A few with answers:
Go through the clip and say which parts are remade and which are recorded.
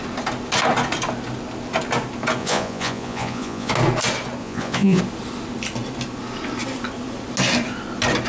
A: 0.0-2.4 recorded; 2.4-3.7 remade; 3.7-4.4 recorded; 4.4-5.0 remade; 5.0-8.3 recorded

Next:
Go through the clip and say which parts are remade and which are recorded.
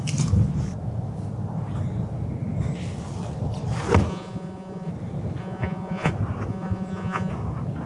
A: 0.0-4.1 recorded; 4.1-4.9 remade; 4.9-5.4 recorded; 5.4-6.1 remade; 6.1-6.5 recorded; 6.5-7.3 remade; 7.3-7.9 recorded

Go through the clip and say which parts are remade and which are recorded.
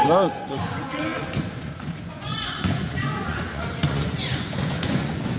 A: 0.0-5.4 remade